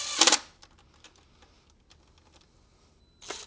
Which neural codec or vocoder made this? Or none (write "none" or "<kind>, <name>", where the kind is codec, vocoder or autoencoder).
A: none